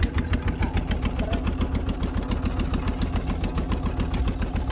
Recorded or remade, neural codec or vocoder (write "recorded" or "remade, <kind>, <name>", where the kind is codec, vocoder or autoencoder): recorded